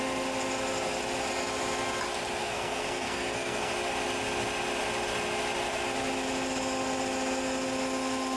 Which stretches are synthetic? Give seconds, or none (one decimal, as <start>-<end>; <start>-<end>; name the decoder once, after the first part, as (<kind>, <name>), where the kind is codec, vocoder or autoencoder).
2.4-3.7 (codec, SNAC)